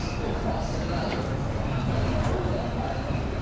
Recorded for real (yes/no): yes